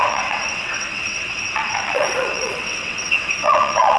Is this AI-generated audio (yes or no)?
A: yes